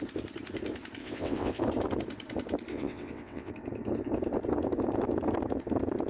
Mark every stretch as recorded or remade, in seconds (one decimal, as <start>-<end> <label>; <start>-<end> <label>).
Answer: 0.0-1.0 recorded; 1.0-1.6 remade; 1.6-2.7 recorded; 2.7-3.5 remade; 3.5-6.1 recorded